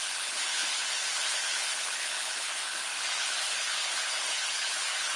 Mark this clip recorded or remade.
remade